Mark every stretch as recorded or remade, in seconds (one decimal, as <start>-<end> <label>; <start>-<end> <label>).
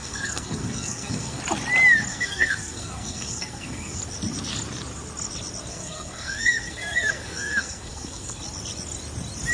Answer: 0.0-1.4 remade; 1.4-2.1 recorded; 2.1-4.0 remade; 4.0-5.7 recorded; 5.7-8.4 remade; 8.4-9.5 recorded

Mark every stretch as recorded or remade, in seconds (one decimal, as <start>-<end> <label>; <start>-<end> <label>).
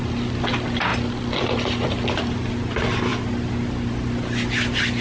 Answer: 0.0-5.0 recorded